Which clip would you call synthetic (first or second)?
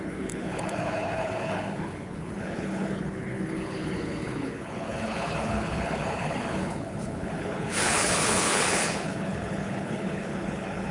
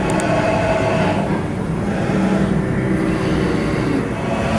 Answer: first